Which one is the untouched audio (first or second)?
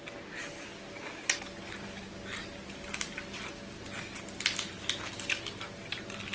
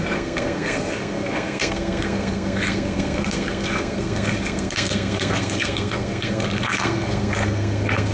first